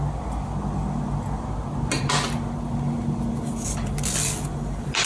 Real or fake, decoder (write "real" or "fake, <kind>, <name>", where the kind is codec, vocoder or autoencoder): real